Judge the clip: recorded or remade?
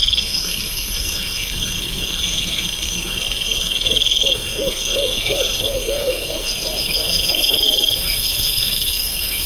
remade